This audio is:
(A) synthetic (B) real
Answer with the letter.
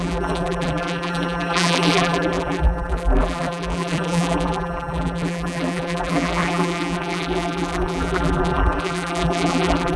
A